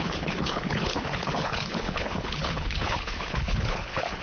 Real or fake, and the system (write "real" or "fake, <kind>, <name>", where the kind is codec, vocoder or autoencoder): fake, codec, HILCodec